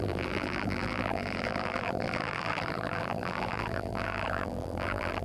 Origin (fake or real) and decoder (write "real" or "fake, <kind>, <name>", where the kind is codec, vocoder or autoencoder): fake, vocoder, BigVGAN v2